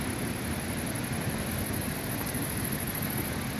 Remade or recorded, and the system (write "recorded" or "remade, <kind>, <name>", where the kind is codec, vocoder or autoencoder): recorded